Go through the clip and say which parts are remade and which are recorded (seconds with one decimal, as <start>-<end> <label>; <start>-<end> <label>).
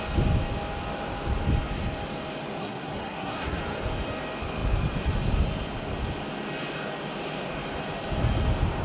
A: 0.0-2.6 recorded; 2.6-3.6 remade; 3.6-8.8 recorded